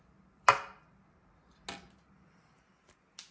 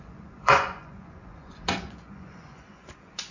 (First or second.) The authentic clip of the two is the first